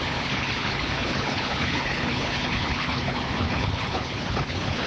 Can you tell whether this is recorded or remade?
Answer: remade